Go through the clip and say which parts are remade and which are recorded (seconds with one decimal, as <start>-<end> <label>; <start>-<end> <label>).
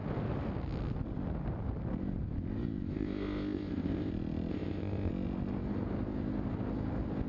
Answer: 0.0-2.9 recorded; 2.9-4.1 remade; 4.1-4.5 recorded; 4.5-5.1 remade; 5.1-7.3 recorded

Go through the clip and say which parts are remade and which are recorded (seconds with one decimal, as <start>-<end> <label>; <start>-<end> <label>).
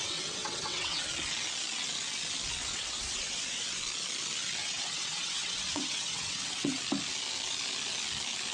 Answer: 0.0-1.0 remade; 1.0-2.6 recorded; 2.6-3.8 remade; 3.8-4.6 recorded; 4.6-6.8 remade; 6.8-8.5 recorded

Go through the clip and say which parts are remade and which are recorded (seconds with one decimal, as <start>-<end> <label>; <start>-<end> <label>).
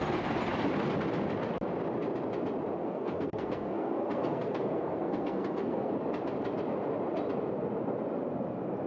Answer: 0.0-2.8 recorded; 2.8-5.9 remade; 5.9-8.9 recorded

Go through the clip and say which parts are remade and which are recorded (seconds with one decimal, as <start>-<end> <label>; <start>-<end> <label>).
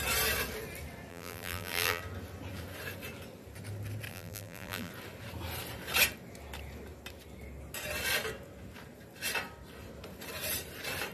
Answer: 0.0-1.1 recorded; 1.1-2.0 remade; 2.0-4.1 recorded; 4.1-4.9 remade; 4.9-11.1 recorded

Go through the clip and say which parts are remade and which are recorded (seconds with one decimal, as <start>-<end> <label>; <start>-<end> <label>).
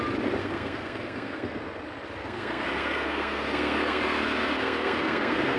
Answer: 0.0-0.4 recorded; 0.4-1.8 remade; 1.8-2.2 recorded; 2.2-5.6 remade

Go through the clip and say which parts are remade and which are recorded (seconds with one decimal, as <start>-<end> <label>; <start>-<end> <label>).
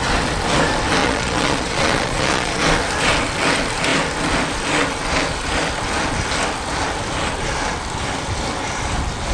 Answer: 0.0-1.0 recorded; 1.0-2.6 remade; 2.6-9.3 recorded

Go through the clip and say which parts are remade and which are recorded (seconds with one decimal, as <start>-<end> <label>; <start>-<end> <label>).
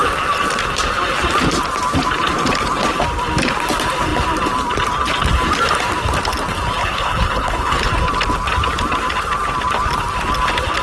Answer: 0.0-6.8 recorded; 6.8-7.9 remade; 7.9-10.8 recorded